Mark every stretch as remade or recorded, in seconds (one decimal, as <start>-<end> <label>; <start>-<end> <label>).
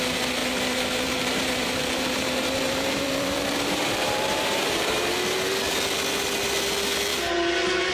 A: 0.0-0.4 recorded; 0.4-5.1 remade; 5.1-7.9 recorded